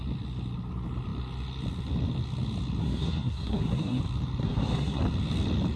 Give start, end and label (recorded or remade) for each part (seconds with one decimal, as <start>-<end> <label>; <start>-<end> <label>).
0.0-2.8 recorded; 2.8-4.0 remade; 4.0-4.4 recorded; 4.4-5.0 remade; 5.0-5.8 recorded